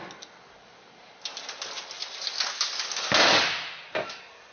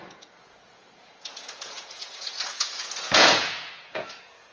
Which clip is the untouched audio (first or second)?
first